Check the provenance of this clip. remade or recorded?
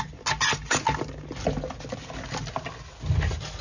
recorded